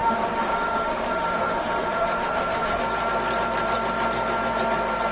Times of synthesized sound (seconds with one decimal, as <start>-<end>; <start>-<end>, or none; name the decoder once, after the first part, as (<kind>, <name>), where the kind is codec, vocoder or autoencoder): 0.0-2.8 (autoencoder, DAC-VAE)